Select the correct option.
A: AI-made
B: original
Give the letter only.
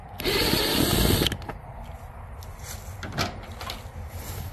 B